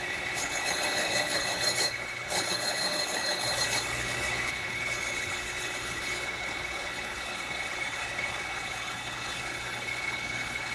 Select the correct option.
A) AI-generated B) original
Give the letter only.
A